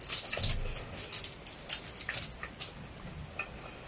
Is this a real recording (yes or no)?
yes